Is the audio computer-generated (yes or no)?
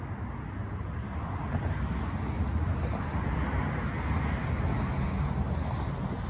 no